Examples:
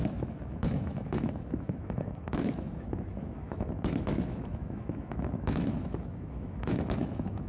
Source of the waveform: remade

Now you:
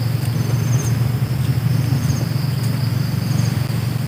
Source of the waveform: recorded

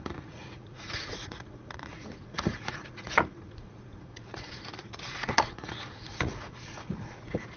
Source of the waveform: remade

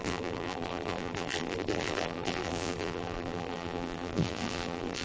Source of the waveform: remade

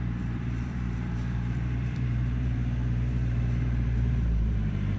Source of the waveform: remade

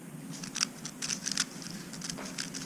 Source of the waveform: recorded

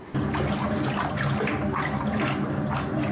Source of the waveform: recorded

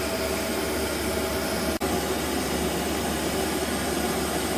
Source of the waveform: recorded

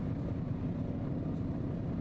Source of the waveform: recorded